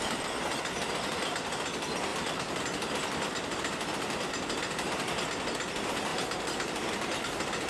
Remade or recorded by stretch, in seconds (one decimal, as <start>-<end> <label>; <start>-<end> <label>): 0.0-2.1 recorded; 2.1-2.6 remade; 2.6-6.1 recorded; 6.1-6.9 remade; 6.9-7.7 recorded